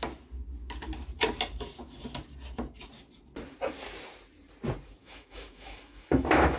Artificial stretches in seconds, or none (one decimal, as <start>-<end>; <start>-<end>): 5.0-6.6